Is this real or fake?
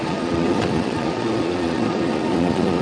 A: fake